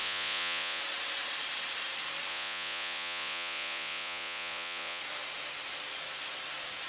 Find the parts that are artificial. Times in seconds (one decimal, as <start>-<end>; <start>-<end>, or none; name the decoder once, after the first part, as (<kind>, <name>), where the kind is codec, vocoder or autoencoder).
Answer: 0.0-0.8 (vocoder, Vocos); 2.3-5.0